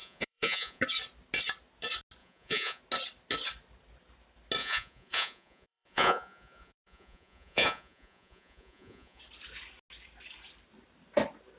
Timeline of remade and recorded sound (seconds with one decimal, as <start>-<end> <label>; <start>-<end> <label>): 0.0-0.8 remade; 0.8-2.2 recorded; 2.2-2.8 remade; 2.8-4.6 recorded; 4.6-9.2 remade; 9.2-11.6 recorded